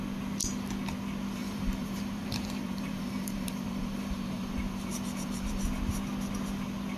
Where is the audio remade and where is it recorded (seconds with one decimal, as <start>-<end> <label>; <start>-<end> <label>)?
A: 0.0-1.4 recorded; 1.4-5.6 remade; 5.6-7.0 recorded